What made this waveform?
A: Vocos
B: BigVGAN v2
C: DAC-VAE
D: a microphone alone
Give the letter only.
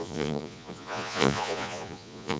A